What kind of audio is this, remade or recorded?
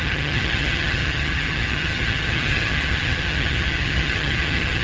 remade